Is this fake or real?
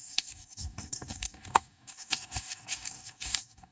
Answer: fake